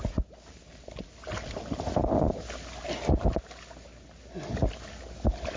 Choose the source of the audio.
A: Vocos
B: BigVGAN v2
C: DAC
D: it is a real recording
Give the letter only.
D